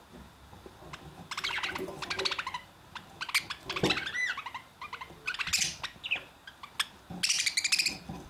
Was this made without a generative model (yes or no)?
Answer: yes